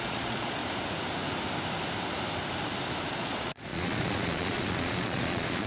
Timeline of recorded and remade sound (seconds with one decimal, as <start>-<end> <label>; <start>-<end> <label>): 0.0-0.6 remade; 0.6-3.1 recorded; 3.1-5.7 remade